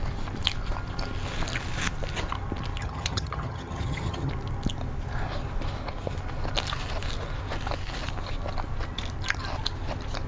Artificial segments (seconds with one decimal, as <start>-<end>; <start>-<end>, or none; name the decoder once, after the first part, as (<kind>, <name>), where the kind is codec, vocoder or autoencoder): 2.8-4.3 (vocoder, HiFi-GAN)